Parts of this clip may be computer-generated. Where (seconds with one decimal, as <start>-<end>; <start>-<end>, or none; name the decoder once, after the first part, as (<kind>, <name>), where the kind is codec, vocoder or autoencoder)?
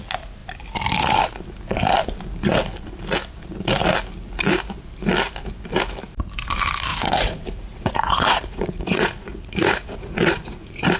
6.9-11.0 (vocoder, Vocos)